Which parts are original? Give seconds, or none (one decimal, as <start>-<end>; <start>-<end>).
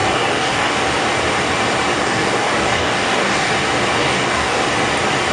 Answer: 0.7-2.0; 3.5-4.0; 4.6-5.3